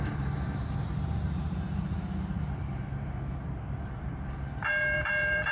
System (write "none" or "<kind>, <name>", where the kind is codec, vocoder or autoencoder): vocoder, BigVGAN v2